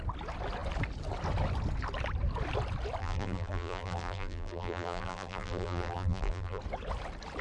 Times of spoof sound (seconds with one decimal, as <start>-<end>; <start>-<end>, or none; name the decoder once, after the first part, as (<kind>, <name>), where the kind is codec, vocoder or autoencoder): 3.0-6.6 (vocoder, BigVGAN v2)